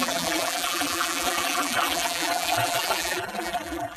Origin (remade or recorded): remade